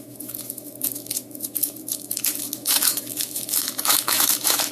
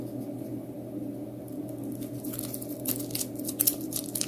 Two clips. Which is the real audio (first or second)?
second